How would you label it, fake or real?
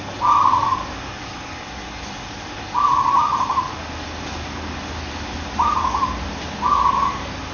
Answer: real